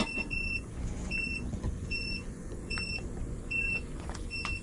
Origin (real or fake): fake